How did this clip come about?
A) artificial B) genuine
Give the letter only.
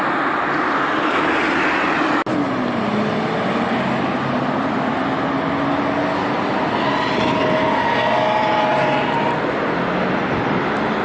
B